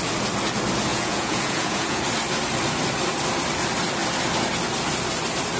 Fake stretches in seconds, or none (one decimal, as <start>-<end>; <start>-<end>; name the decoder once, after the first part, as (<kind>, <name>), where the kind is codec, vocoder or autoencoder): 0.9-2.0 (vocoder, Vocos)